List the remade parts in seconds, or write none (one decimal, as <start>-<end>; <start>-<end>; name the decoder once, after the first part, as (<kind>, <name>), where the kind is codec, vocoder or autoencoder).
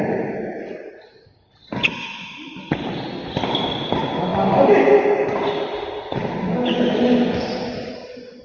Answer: none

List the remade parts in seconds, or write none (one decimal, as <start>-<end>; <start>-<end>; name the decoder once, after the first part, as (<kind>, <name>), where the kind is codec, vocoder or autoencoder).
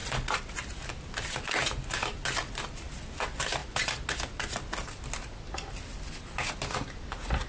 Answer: none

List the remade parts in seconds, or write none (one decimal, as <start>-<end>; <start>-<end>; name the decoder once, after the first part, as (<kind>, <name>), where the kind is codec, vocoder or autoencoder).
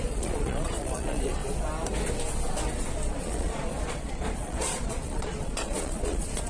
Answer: 0.0-1.4 (vocoder, Vocos); 3.2-6.5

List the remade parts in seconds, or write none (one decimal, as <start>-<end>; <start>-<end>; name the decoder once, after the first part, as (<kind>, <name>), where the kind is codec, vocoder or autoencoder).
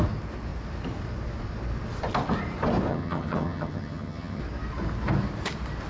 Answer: 2.9-4.4 (vocoder, HiFi-GAN)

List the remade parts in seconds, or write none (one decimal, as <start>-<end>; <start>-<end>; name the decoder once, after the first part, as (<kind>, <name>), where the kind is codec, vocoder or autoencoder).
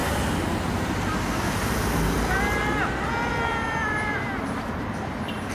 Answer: 3.3-5.5 (vocoder, BigVGAN v2)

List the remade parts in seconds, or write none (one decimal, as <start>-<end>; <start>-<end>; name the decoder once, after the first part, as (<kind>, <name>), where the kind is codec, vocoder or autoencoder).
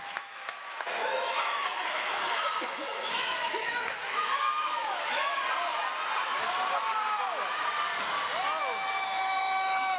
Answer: 0.0-5.4 (autoencoder, DAC-VAE); 8.6-10.0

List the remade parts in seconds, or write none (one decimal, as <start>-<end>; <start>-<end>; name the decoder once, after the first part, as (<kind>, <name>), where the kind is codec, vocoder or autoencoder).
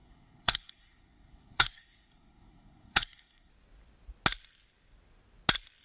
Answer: 0.0-3.5 (codec, SNAC)